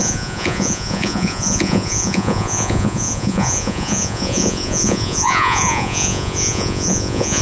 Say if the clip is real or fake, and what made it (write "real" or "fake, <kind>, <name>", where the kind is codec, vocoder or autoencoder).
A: fake, vocoder, Vocos